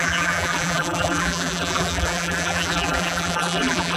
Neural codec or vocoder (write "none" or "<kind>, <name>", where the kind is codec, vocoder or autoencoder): vocoder, BigVGAN v2